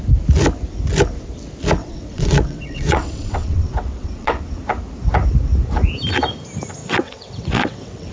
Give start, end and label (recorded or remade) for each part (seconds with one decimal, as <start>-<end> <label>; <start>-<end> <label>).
0.0-1.8 recorded; 1.8-4.4 remade; 4.4-6.8 recorded; 6.8-8.1 remade

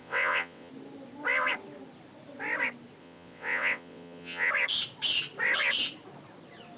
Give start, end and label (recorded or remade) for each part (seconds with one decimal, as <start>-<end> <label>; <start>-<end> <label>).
0.0-0.7 remade; 0.7-3.0 recorded; 3.0-4.5 remade; 4.5-6.8 recorded

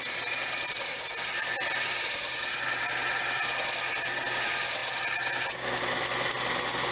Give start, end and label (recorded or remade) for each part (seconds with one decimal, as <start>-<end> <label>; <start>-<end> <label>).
0.0-6.9 recorded

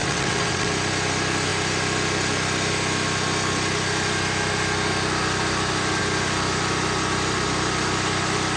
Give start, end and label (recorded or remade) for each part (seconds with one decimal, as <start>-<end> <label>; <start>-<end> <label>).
0.0-0.7 remade; 0.7-8.6 recorded

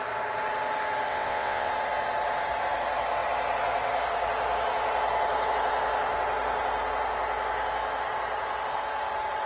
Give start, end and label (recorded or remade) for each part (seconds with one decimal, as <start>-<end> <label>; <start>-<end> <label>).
0.0-1.1 recorded; 1.1-1.7 remade; 1.7-9.5 recorded

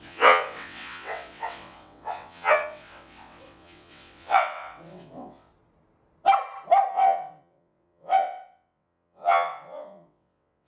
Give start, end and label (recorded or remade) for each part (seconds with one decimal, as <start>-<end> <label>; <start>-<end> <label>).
0.0-5.5 remade; 5.5-6.9 recorded; 6.9-10.7 remade

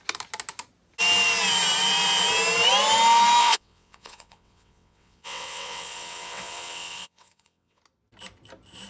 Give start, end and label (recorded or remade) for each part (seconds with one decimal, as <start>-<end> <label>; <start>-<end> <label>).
0.0-3.4 recorded; 3.4-7.8 remade; 7.8-8.9 recorded

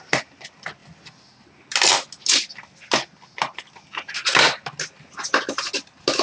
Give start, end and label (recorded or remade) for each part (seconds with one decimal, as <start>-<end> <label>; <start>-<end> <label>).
0.0-6.2 recorded